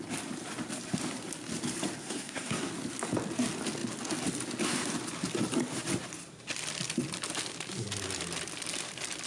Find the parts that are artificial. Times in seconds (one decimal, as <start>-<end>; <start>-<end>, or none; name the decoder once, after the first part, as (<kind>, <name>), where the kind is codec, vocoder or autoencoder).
2.0-2.7 (codec, SNAC)

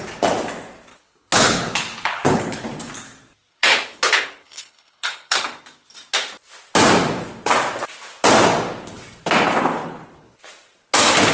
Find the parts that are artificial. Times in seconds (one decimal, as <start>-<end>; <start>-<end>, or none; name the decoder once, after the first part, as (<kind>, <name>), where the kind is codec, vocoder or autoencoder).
0.9-2.6 (codec, HILCodec); 3.5-5.5; 9.8-10.4